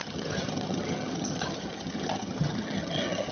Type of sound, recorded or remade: remade